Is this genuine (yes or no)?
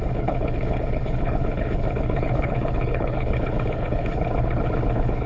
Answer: no